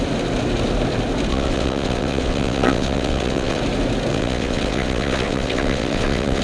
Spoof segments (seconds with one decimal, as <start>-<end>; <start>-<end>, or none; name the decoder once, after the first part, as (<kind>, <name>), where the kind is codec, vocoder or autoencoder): 1.3-3.6 (vocoder, WaveNeXt); 4.1-6.4